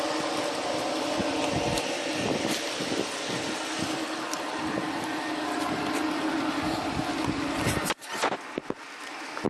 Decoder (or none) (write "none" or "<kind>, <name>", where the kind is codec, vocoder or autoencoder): none